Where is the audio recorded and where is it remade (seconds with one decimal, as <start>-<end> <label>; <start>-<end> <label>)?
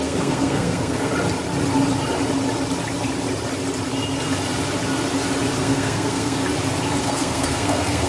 0.0-1.1 remade; 1.1-5.6 recorded; 5.6-6.4 remade; 6.4-7.0 recorded; 7.0-8.1 remade